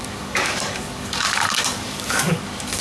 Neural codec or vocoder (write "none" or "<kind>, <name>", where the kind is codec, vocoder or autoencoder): codec, DAC